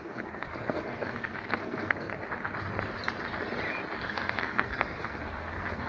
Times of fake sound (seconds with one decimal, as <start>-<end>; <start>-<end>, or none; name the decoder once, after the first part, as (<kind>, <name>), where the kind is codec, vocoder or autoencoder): 0.0-2.1 (codec, SNAC); 4.0-5.9